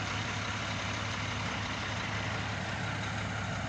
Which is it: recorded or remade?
recorded